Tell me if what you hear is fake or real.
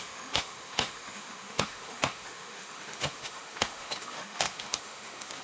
fake